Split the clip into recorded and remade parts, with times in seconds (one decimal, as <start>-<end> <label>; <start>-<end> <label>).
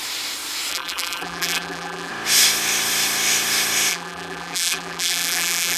0.0-0.7 recorded; 0.7-2.1 remade; 2.1-3.9 recorded; 3.9-5.8 remade